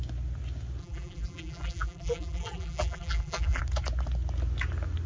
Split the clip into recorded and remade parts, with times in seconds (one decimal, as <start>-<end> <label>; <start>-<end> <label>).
0.0-0.8 recorded; 0.8-3.6 remade; 3.6-5.1 recorded